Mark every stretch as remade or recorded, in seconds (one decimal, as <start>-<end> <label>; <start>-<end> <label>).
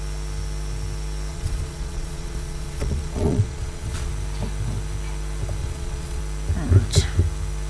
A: 0.0-1.3 recorded; 1.3-4.1 remade; 4.1-5.6 recorded; 5.6-6.2 remade; 6.2-7.7 recorded